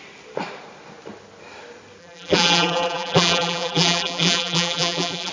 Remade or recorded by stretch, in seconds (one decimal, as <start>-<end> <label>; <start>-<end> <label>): 0.0-2.0 recorded; 2.0-5.3 remade